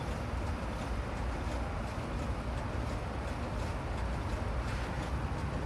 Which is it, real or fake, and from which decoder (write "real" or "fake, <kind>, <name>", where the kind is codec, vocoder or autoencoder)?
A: real